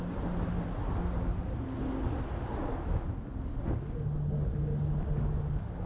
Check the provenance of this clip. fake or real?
real